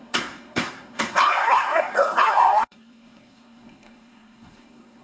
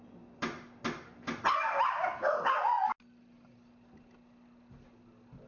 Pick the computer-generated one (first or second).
first